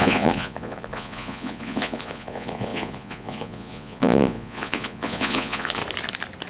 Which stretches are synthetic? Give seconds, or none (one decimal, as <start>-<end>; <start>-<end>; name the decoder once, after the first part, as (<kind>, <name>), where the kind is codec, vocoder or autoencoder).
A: 0.0-5.8 (vocoder, Vocos)